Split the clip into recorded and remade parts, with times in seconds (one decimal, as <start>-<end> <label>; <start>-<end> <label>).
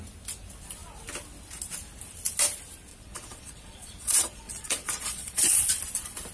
0.0-2.9 recorded; 2.9-5.7 remade; 5.7-6.3 recorded